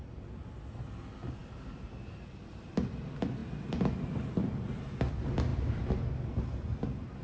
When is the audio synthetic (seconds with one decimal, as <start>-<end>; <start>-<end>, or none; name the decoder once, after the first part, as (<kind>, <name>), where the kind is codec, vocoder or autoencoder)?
none